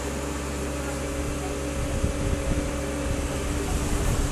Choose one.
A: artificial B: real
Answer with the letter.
B